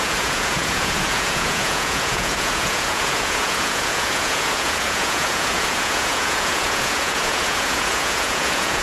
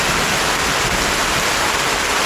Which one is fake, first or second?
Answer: first